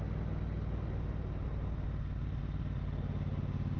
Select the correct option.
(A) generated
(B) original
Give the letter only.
B